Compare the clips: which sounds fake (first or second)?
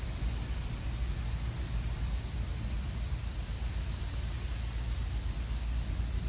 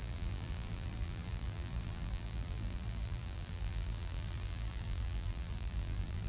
second